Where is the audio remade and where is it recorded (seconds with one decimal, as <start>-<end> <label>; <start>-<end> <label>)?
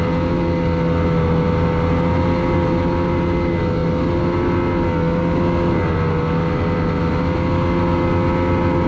0.0-8.9 recorded